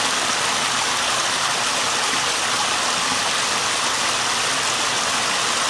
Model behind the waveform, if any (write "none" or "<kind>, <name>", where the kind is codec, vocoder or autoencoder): none